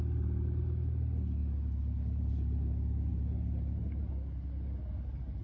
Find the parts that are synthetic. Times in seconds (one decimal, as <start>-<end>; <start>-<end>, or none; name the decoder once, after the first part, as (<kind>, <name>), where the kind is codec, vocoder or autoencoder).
none